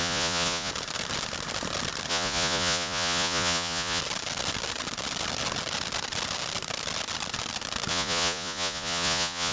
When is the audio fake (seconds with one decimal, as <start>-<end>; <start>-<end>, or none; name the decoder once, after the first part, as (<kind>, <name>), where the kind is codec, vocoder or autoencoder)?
0.0-0.7 (vocoder, Vocos); 2.1-4.0; 7.9-9.5